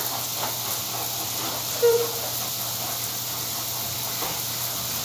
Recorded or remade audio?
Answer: recorded